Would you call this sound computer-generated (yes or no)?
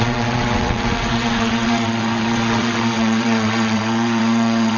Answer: yes